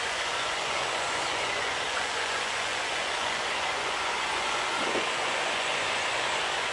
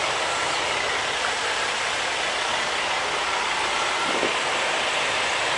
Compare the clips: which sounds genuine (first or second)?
second